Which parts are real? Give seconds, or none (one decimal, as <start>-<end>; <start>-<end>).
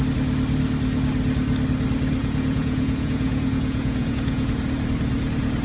0.0-2.2; 4.6-5.6